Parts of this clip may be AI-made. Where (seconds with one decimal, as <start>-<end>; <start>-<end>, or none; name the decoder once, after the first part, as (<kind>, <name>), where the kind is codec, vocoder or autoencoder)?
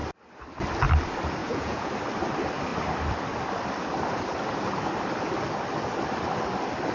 1.4-1.9 (vocoder, Vocos)